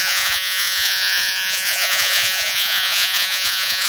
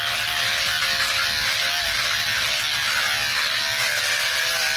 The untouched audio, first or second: second